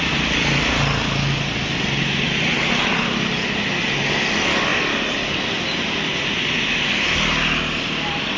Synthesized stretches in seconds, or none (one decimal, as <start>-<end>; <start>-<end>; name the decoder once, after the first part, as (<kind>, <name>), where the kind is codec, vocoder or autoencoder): none